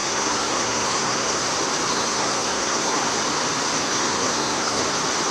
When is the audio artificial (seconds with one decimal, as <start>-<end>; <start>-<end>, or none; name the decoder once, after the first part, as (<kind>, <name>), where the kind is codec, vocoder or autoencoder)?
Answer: 0.0-1.4 (codec, SNAC); 1.9-3.0; 3.8-4.8